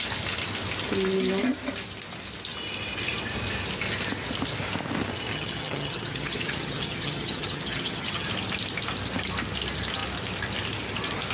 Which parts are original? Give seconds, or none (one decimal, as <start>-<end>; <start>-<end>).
0.0-5.3; 8.3-11.3